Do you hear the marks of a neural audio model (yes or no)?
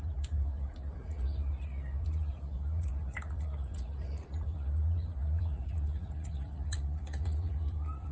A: yes